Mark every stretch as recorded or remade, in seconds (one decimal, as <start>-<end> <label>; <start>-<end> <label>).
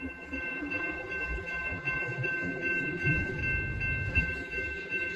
0.0-3.4 remade; 3.4-4.1 recorded; 4.1-5.2 remade